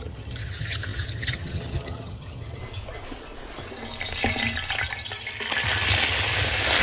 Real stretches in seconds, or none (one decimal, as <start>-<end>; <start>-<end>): 2.6-6.8